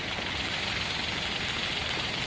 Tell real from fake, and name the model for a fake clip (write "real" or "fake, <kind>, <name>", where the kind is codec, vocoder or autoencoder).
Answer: real